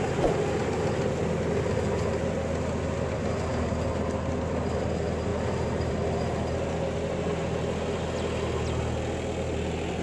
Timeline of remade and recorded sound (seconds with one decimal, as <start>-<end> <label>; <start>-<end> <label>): 0.0-10.0 recorded